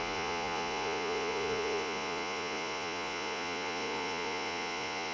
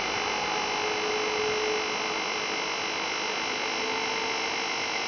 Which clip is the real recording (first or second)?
second